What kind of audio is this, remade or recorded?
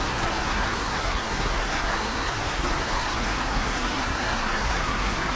remade